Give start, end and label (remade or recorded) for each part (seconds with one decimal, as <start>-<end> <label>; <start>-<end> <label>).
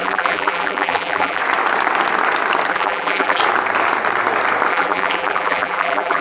0.0-1.4 remade; 1.4-2.7 recorded; 2.7-3.4 remade; 3.4-4.7 recorded; 4.7-6.2 remade